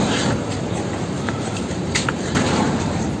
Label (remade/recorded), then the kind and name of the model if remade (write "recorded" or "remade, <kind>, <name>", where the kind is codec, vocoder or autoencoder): remade, vocoder, BigVGAN v2